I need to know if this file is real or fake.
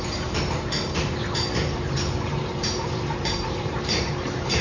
fake